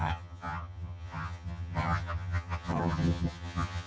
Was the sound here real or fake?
fake